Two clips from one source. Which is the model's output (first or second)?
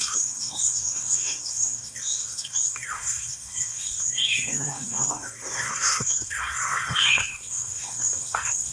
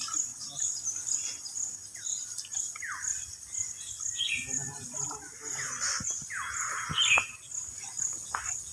first